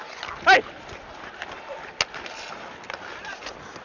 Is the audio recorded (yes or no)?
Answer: yes